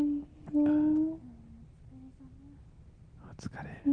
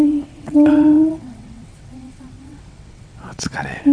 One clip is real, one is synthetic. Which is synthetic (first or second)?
second